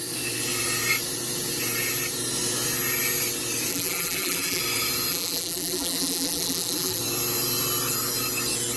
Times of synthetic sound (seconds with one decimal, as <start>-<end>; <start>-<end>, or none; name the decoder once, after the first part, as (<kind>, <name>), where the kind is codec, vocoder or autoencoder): 3.7-4.6 (vocoder, BigVGAN v2); 5.1-7.0